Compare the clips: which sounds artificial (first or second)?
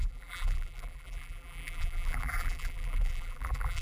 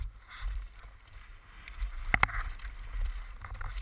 first